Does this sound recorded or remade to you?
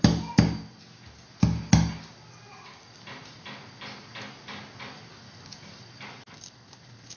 recorded